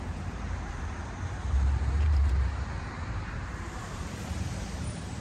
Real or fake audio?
fake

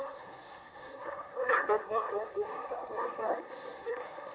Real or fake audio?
fake